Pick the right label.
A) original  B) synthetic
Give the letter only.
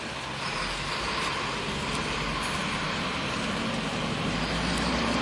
A